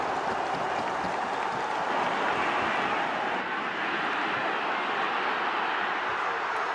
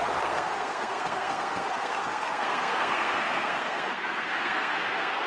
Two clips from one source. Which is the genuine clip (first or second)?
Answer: first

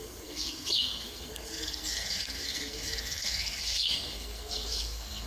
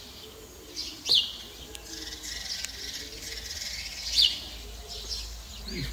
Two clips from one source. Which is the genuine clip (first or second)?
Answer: second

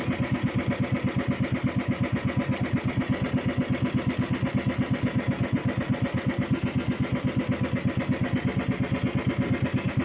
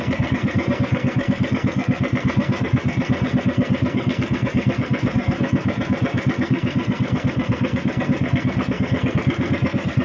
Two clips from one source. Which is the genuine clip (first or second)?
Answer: first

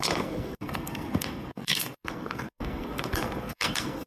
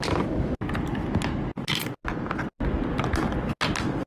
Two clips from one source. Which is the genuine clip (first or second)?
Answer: second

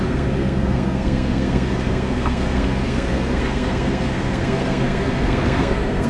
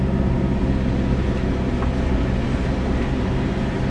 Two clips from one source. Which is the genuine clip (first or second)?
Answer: second